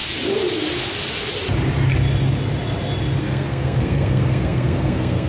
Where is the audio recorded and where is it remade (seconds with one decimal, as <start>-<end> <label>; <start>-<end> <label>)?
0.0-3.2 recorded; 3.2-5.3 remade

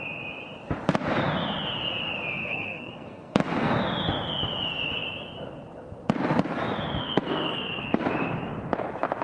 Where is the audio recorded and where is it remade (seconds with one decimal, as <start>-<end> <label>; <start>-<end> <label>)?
0.0-2.4 recorded; 2.4-3.7 remade; 3.7-7.0 recorded; 7.0-8.1 remade; 8.1-9.2 recorded

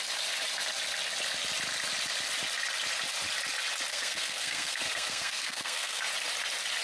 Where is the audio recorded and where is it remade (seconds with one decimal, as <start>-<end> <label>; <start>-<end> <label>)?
0.0-3.9 recorded; 3.9-6.0 remade; 6.0-6.8 recorded

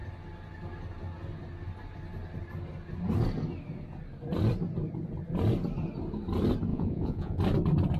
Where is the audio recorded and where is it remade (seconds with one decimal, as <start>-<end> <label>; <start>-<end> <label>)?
0.0-6.7 recorded; 6.7-7.4 remade; 7.4-8.0 recorded

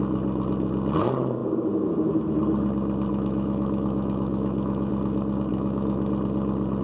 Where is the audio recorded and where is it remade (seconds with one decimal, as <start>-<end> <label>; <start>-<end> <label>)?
0.0-3.1 recorded; 3.1-4.9 remade; 4.9-5.5 recorded; 5.5-6.1 remade; 6.1-6.8 recorded

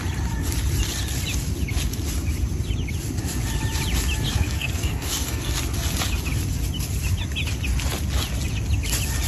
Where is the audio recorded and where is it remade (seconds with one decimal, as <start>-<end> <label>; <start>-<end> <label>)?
0.0-4.3 recorded; 4.3-5.6 remade; 5.6-9.3 recorded

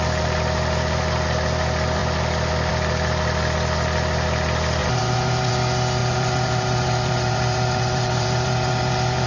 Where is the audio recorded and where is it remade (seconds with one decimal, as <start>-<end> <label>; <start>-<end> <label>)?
0.0-4.8 recorded; 4.8-5.5 remade; 5.5-6.0 recorded; 6.0-9.3 remade